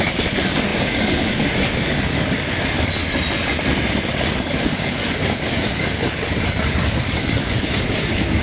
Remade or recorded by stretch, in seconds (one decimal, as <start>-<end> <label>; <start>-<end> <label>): 0.0-3.0 remade; 3.0-4.2 recorded; 4.2-8.4 remade